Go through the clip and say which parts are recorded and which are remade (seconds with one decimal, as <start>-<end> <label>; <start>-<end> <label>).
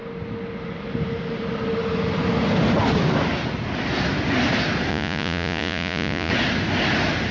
0.0-4.9 recorded; 4.9-6.3 remade; 6.3-7.3 recorded